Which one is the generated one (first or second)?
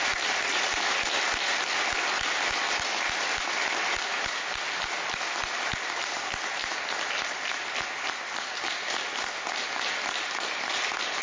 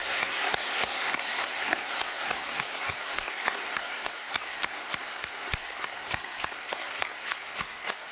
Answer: second